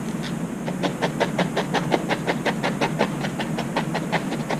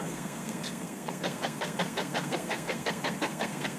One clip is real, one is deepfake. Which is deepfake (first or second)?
second